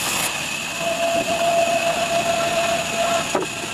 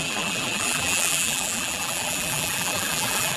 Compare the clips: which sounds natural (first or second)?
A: first